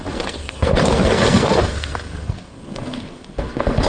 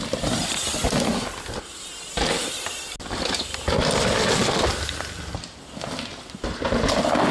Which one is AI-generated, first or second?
first